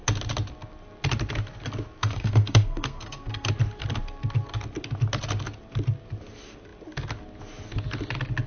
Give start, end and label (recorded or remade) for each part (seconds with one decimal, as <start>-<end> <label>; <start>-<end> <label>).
0.0-2.0 recorded; 2.0-3.5 remade; 3.5-8.5 recorded

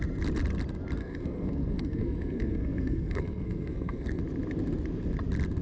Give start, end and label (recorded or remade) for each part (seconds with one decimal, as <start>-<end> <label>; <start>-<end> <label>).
0.0-1.0 recorded; 1.0-4.2 remade; 4.2-5.6 recorded